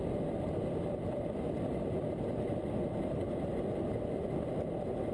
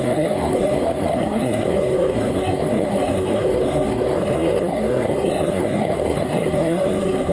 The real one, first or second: first